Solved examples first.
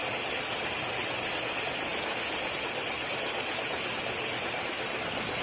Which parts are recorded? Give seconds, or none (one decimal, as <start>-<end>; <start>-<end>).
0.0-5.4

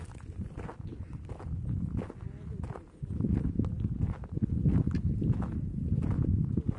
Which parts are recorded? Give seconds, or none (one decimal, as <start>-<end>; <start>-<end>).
0.0-6.8

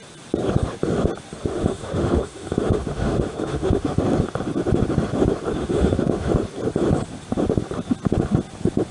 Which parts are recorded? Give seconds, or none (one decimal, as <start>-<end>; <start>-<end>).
0.0-1.5; 4.0-5.6; 6.3-8.9

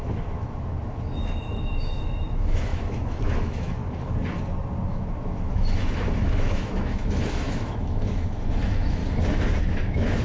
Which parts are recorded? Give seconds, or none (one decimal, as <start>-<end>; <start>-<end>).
3.8-4.9; 9.0-9.6